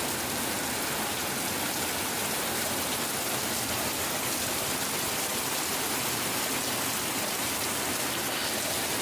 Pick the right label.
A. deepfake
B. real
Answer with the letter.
B